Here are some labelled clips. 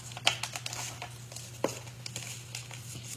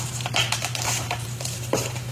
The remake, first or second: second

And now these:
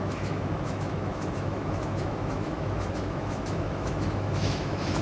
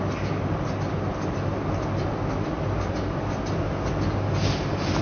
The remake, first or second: first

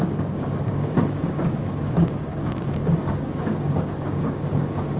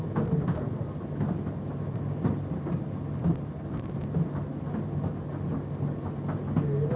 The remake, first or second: first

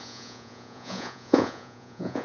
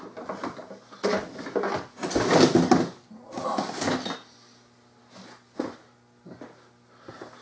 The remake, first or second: first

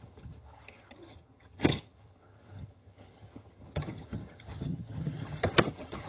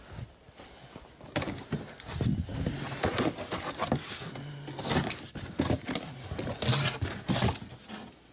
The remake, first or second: first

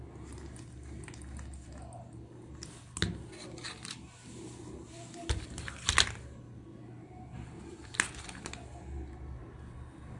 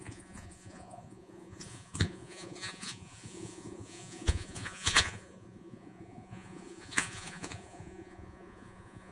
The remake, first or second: second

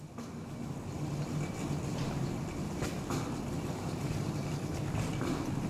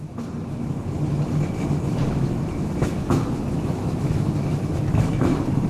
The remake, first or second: second